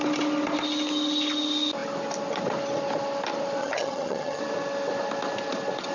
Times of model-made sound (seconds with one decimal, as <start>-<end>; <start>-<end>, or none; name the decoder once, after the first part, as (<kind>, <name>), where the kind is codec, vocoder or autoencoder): 3.6-4.4 (vocoder, HiFi-GAN)